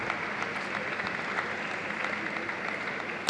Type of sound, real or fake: real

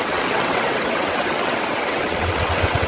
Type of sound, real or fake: fake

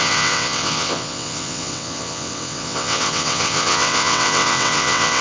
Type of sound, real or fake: fake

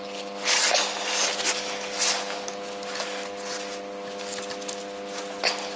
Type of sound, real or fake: real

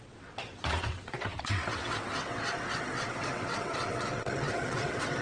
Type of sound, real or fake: fake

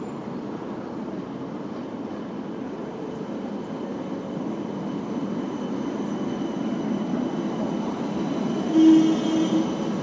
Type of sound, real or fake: real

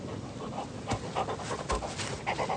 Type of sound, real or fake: real